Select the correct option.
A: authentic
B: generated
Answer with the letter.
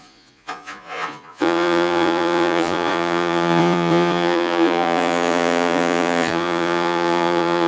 B